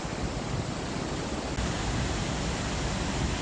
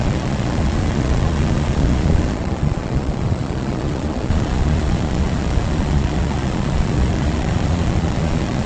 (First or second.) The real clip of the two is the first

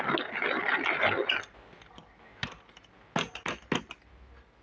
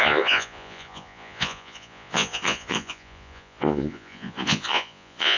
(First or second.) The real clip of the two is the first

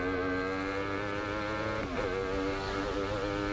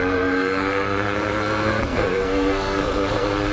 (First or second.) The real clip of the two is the first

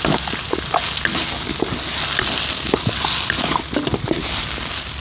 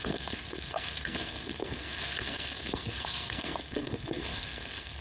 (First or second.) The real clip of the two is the first